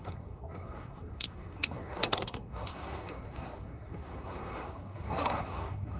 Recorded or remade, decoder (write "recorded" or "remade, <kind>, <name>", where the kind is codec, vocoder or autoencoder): remade, codec, SNAC